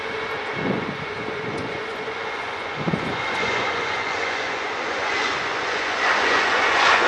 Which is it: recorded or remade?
remade